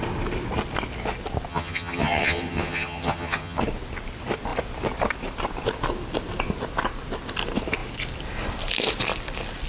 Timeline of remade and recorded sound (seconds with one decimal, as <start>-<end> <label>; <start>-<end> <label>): 0.0-1.5 recorded; 1.5-3.6 remade; 3.6-9.7 recorded